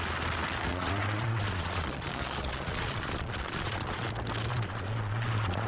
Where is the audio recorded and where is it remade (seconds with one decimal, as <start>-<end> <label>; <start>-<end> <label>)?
0.0-0.7 recorded; 0.7-4.1 remade; 4.1-4.5 recorded; 4.5-5.7 remade